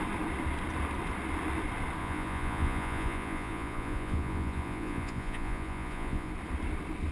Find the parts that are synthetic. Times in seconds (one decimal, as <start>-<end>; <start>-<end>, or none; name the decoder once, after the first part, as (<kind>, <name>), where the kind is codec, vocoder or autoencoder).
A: 2.0-6.3 (vocoder, Vocos)